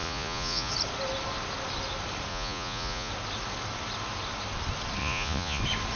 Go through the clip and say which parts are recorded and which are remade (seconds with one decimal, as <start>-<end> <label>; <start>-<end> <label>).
0.0-0.7 remade; 0.7-2.3 recorded; 2.3-3.1 remade; 3.1-5.0 recorded; 5.0-5.6 remade; 5.6-6.0 recorded